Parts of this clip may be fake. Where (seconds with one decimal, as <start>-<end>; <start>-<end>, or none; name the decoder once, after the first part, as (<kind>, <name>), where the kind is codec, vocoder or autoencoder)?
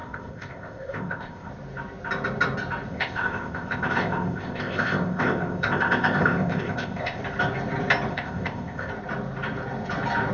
0.0-1.5 (codec, ZipCodec); 2.9-7.2; 8.1-8.9